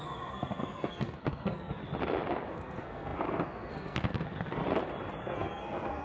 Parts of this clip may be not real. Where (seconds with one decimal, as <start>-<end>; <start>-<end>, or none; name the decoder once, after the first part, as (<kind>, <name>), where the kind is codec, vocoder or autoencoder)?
0.0-1.8 (codec, SNAC); 2.5-4.6; 5.2-6.0